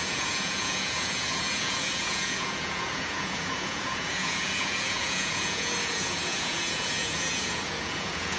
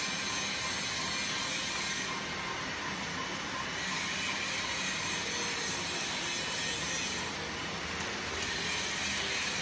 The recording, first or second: second